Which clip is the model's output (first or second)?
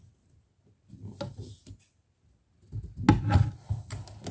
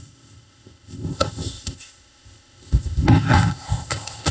second